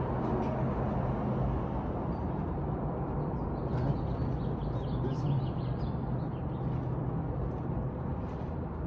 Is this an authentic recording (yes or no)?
yes